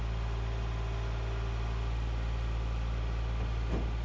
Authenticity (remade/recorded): recorded